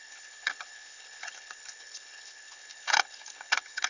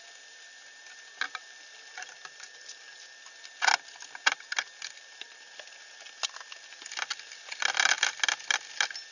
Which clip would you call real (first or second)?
second